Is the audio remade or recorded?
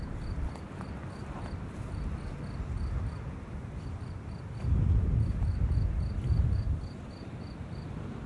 recorded